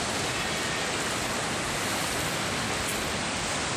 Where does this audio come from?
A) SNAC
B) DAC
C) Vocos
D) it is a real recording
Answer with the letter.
D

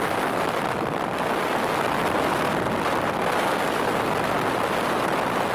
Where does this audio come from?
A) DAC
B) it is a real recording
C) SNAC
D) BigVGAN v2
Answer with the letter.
B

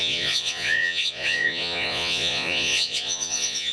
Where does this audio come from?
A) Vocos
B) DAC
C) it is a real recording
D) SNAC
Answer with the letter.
A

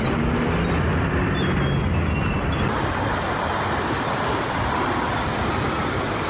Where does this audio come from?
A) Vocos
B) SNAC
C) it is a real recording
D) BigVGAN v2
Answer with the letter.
C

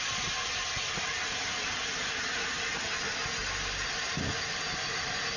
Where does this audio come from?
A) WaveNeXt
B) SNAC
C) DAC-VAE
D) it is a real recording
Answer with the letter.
D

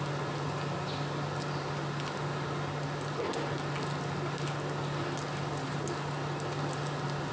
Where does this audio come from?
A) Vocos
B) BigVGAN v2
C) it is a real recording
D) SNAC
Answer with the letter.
C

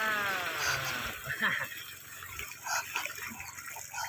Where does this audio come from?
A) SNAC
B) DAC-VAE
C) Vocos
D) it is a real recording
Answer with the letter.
D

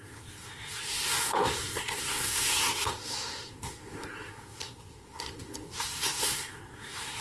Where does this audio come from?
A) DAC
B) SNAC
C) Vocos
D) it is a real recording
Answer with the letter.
B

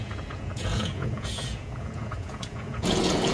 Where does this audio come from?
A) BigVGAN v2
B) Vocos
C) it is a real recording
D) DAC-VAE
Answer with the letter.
B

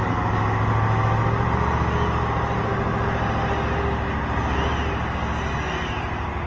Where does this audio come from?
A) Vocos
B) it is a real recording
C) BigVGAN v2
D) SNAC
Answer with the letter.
B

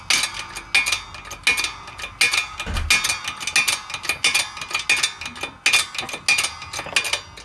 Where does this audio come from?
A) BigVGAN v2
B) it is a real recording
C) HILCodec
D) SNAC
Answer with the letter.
B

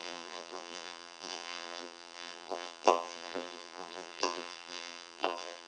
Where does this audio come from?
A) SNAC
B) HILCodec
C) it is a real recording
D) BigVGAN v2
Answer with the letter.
D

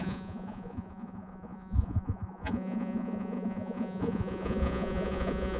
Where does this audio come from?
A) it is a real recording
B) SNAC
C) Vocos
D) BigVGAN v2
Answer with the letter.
C